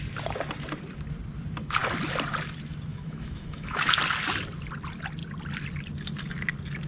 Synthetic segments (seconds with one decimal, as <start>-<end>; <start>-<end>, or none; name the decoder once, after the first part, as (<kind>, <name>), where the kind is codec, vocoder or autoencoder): 2.9-4.0 (autoencoder, DAC-VAE)